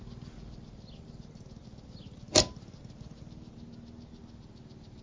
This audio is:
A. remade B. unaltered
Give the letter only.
B